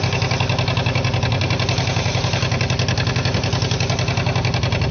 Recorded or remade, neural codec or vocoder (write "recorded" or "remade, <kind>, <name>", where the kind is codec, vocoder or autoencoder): recorded